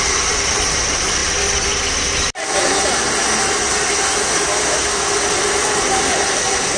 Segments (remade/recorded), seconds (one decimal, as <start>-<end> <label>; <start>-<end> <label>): 0.0-1.2 remade; 1.2-5.3 recorded; 5.3-6.8 remade